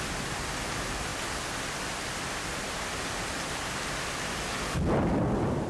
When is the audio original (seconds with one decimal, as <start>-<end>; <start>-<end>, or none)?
none